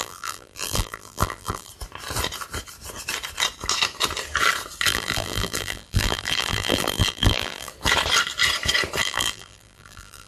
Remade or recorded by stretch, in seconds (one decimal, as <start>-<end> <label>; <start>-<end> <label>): 0.0-1.7 remade; 1.7-4.9 recorded; 4.9-7.7 remade; 7.7-9.0 recorded; 9.0-10.3 remade

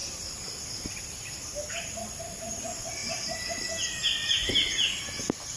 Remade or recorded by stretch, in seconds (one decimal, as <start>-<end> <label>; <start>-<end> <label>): 0.0-5.6 recorded

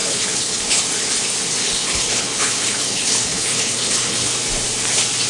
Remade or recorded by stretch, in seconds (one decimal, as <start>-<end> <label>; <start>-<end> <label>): 0.0-0.8 remade; 0.8-1.6 recorded; 1.6-4.3 remade; 4.3-5.3 recorded

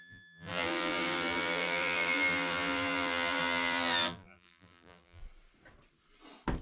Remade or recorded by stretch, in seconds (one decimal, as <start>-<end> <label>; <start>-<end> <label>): 0.0-5.2 remade; 5.2-6.6 recorded

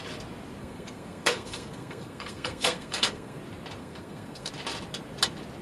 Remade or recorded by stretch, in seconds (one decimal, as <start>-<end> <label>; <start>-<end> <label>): 0.0-0.6 recorded; 0.6-3.4 remade; 3.4-3.8 recorded; 3.8-4.5 remade; 4.5-5.6 recorded

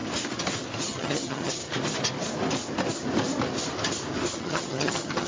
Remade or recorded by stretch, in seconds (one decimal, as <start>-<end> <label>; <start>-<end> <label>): 0.0-0.8 recorded; 0.8-1.6 remade; 1.6-4.4 recorded; 4.4-5.3 remade

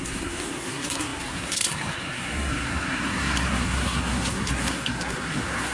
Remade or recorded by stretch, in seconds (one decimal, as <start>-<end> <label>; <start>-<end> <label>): 0.0-5.7 remade